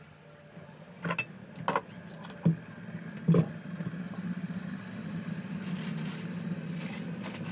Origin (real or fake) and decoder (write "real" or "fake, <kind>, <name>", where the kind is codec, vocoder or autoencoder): real